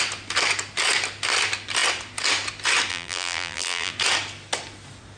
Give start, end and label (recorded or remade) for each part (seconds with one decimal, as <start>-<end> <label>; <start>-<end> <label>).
0.0-2.9 recorded; 2.9-3.9 remade; 3.9-5.2 recorded